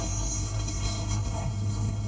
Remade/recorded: remade